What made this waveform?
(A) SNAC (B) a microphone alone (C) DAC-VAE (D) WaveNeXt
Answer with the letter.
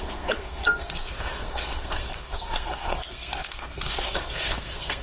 A